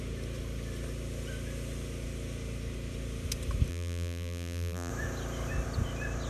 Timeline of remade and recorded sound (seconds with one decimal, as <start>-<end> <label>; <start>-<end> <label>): 0.0-3.7 recorded; 3.7-4.9 remade; 4.9-6.3 recorded